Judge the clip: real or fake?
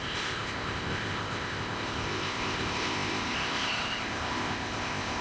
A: fake